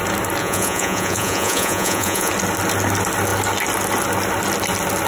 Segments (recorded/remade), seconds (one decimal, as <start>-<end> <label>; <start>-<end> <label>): 0.0-0.4 recorded; 0.4-2.3 remade; 2.3-5.1 recorded